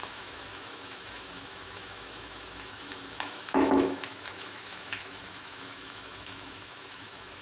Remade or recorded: remade